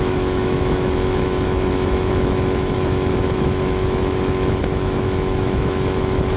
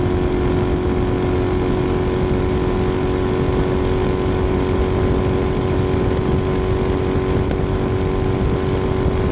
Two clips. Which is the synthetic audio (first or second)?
first